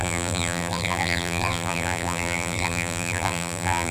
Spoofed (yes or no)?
yes